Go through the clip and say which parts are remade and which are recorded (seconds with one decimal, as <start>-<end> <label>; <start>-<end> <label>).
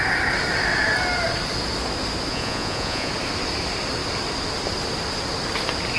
0.0-2.3 recorded; 2.3-3.1 remade; 3.1-6.0 recorded